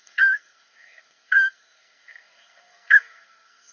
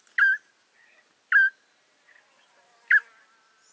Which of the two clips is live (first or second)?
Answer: second